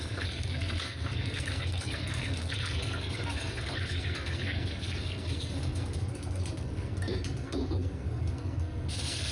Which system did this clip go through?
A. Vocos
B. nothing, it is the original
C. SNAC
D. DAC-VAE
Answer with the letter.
C